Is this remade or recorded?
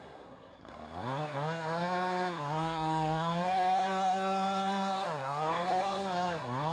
remade